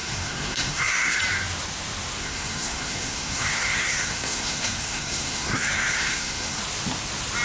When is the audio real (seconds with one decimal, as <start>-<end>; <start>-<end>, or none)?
1.2-2.2; 6.6-7.4